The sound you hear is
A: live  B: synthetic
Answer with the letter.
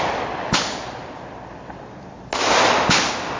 A